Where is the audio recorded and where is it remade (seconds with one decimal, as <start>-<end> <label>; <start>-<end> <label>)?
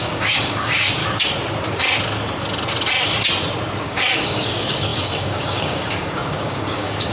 0.0-1.0 remade; 1.0-3.8 recorded; 3.8-7.1 remade